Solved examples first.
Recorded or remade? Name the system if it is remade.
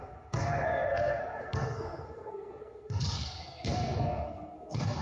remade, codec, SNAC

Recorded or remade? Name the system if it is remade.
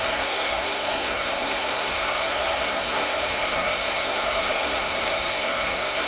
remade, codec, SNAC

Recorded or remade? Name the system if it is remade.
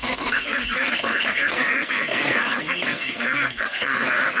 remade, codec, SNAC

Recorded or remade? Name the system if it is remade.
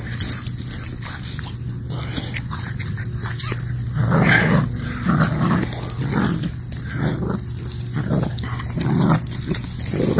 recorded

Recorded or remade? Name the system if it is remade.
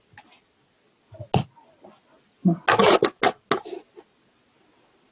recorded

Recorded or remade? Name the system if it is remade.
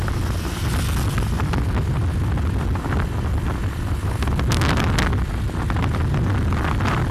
recorded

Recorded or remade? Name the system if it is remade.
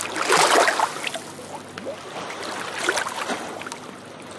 recorded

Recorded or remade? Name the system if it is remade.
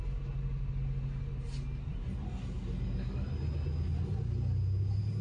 recorded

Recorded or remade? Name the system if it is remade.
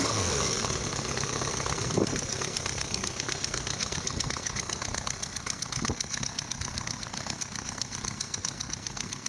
remade, codec, SNAC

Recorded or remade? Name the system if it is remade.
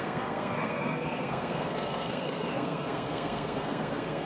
remade, codec, SNAC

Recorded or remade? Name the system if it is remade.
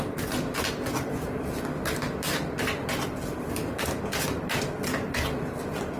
recorded